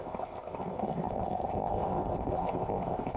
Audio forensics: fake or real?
fake